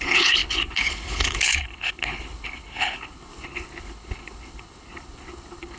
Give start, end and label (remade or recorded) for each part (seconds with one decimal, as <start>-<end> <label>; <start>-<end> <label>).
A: 0.0-5.8 remade